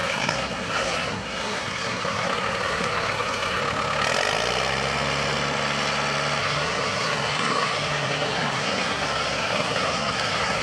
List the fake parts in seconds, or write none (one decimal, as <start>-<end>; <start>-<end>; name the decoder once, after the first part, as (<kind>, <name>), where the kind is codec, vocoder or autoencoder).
0.0-3.6 (codec, SNAC); 6.4-10.6